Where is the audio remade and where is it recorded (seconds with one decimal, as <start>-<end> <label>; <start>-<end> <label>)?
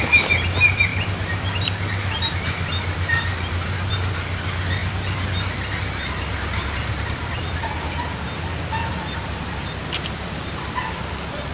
0.0-11.5 recorded